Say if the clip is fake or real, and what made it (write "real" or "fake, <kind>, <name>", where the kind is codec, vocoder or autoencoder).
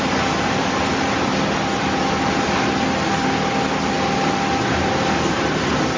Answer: real